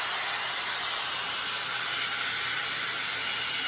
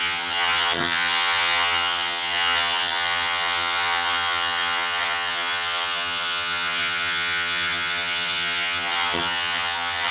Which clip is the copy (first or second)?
second